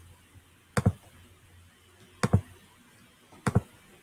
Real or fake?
real